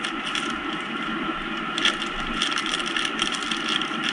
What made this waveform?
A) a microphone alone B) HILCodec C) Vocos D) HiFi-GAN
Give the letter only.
A